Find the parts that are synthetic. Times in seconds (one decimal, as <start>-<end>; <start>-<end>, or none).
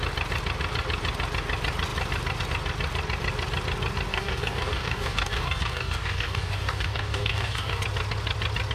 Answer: 4.1-7.8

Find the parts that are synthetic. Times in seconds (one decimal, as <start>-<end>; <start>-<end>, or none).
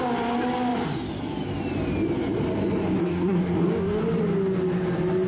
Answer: 3.0-4.0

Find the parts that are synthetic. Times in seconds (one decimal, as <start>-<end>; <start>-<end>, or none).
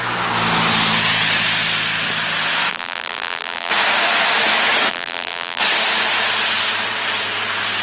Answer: 2.7-3.7; 4.9-5.6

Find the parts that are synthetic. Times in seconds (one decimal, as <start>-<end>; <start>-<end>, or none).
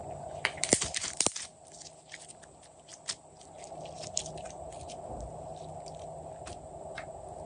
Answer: 0.0-0.6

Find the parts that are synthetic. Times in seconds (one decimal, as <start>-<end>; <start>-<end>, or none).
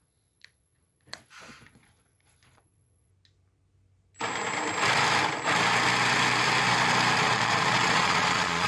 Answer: 0.0-3.1; 7.2-8.7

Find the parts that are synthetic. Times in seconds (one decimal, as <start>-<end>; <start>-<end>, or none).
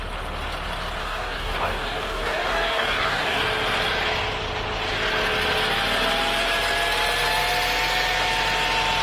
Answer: 1.0-3.4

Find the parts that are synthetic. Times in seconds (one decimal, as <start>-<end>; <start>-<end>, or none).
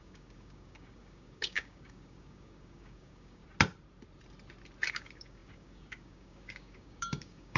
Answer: 0.0-3.4; 4.9-7.6